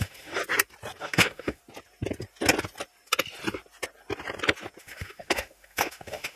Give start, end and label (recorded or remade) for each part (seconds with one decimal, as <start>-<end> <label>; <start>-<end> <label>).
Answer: 0.0-0.4 remade; 0.4-1.0 recorded; 1.0-1.6 remade; 1.6-4.8 recorded; 4.8-6.4 remade